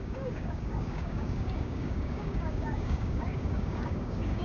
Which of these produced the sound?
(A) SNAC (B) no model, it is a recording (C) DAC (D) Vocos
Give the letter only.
C